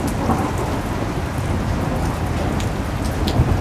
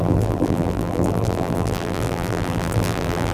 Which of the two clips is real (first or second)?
first